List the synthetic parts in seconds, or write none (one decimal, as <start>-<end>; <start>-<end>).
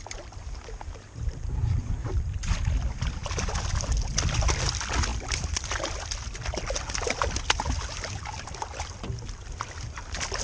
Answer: 3.2-3.7